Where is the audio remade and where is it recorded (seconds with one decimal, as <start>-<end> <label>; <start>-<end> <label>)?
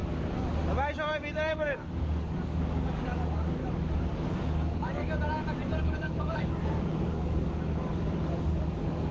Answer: 0.0-1.5 recorded; 1.5-3.6 remade; 3.6-4.4 recorded; 4.4-5.0 remade; 5.0-5.8 recorded; 5.8-9.1 remade